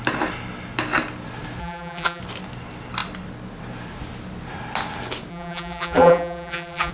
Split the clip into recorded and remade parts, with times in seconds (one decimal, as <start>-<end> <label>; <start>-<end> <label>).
0.0-1.6 recorded; 1.6-2.2 remade; 2.2-5.3 recorded; 5.3-6.9 remade